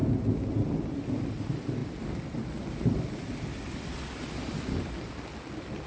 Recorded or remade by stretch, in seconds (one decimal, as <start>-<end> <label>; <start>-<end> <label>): 0.0-5.9 recorded